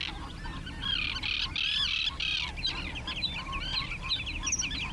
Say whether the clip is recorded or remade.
recorded